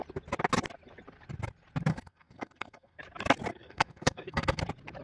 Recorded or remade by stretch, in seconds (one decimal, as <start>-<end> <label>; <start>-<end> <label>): 0.0-1.9 recorded; 1.9-3.0 remade; 3.0-3.5 recorded; 3.5-4.6 remade; 4.6-5.0 recorded